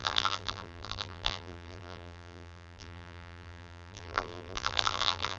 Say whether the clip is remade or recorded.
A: remade